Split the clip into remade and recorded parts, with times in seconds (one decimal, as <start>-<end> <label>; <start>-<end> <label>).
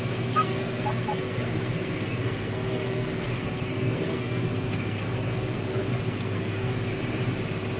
0.0-6.9 remade; 6.9-7.8 recorded